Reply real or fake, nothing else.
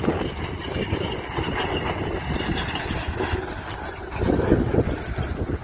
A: real